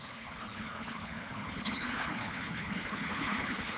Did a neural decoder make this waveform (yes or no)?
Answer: yes